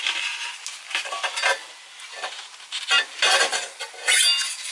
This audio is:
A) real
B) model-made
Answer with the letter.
A